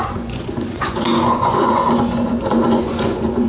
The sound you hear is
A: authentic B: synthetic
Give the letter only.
B